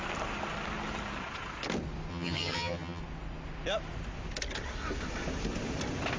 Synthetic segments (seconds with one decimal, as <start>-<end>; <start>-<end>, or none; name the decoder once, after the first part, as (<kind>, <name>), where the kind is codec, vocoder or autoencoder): 2.1-3.0 (vocoder, HiFi-GAN)